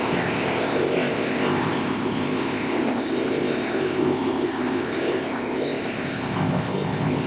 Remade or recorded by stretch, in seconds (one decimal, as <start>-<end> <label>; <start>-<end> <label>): 0.0-7.3 remade